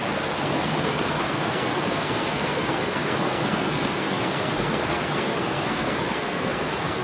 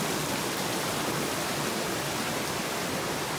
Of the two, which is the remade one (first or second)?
first